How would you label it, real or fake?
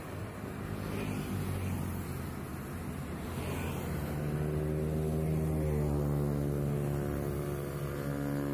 real